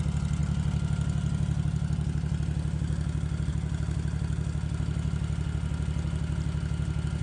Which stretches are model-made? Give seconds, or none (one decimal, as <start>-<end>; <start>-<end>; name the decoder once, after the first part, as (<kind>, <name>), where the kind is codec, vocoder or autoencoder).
none